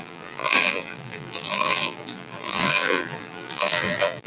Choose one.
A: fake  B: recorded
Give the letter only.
A